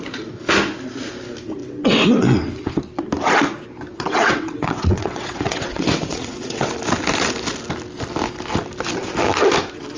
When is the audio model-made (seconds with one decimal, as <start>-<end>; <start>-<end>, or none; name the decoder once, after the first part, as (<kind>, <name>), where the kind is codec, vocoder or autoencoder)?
1.6-2.8 (vocoder, WaveNeXt); 3.9-6.7

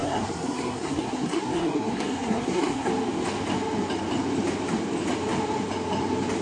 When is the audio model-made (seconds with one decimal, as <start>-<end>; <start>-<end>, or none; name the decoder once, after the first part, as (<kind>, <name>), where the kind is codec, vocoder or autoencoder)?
0.0-2.9 (codec, SNAC)

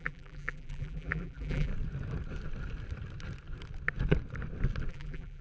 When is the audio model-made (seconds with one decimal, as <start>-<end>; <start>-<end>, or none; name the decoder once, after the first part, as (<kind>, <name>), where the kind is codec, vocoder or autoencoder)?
0.0-1.7 (vocoder, BigVGAN v2); 4.9-5.4

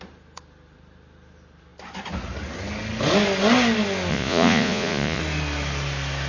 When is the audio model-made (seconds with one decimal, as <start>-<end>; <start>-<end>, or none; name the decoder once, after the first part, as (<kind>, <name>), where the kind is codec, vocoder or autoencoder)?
4.1-5.2 (vocoder, Vocos)

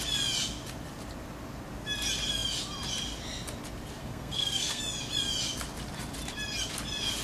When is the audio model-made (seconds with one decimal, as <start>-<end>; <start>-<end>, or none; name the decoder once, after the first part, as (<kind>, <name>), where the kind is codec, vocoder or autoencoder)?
4.0-4.8 (codec, SNAC)

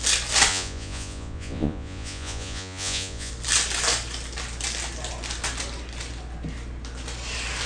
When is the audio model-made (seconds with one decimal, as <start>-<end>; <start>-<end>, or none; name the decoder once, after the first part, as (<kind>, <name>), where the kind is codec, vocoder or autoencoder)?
0.5-3.3 (vocoder, Vocos)

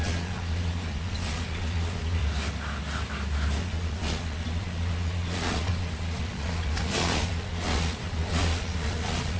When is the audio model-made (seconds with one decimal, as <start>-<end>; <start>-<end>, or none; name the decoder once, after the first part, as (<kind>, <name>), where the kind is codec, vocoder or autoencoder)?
0.0-2.2 (vocoder, Vocos); 3.6-9.4